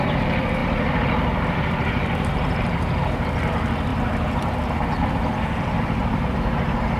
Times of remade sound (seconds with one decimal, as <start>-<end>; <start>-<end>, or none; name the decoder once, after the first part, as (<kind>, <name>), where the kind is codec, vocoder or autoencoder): 0.6-3.5 (vocoder, BigVGAN v2); 6.0-7.0